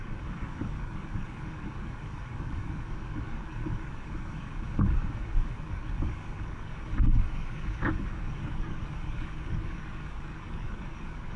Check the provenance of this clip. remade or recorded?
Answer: remade